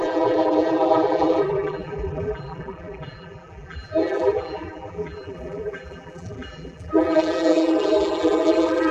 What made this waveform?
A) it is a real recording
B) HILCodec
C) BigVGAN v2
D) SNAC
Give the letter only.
C